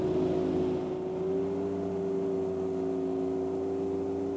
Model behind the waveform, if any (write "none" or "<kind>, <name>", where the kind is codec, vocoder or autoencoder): none